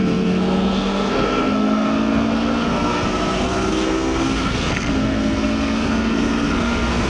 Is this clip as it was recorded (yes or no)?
no